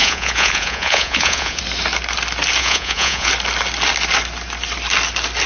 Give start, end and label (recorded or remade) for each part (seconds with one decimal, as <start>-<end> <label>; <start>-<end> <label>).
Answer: 0.0-1.6 remade; 1.6-2.6 recorded; 2.6-3.3 remade; 3.3-5.5 recorded